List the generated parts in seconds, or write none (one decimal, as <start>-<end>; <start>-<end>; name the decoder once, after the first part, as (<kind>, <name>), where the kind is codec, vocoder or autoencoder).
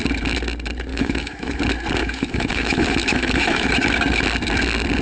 0.9-1.6 (autoencoder, DAC-VAE); 2.0-3.7